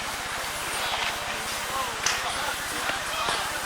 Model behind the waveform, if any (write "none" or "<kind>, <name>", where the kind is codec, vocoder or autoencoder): none